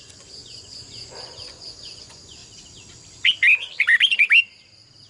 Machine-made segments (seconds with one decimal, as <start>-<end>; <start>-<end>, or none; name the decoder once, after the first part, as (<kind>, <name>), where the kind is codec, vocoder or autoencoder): 0.0-2.4 (vocoder, Vocos)